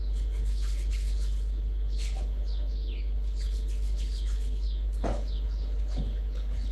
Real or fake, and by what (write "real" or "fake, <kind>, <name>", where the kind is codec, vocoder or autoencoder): fake, codec, HILCodec